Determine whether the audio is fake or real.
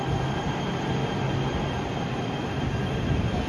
real